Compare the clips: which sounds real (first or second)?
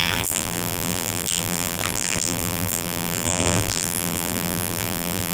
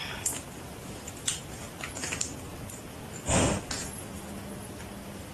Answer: second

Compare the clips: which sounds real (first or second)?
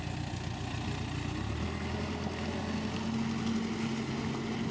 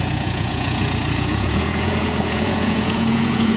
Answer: first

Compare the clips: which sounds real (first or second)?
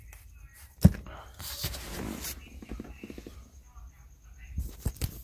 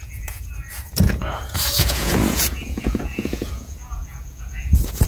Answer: first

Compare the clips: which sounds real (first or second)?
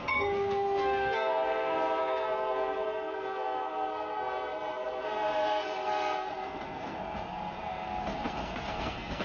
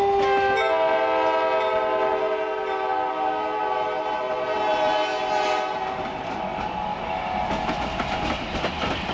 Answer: second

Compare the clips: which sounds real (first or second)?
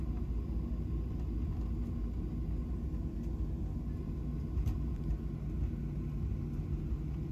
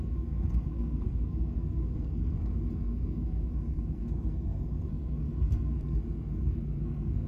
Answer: first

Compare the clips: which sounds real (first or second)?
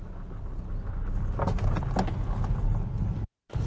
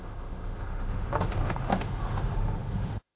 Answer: first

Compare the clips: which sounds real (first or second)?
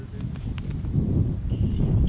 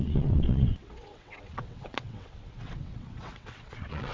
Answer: first